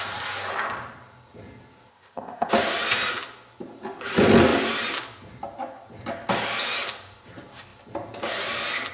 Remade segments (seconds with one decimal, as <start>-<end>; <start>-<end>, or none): 1.9-2.5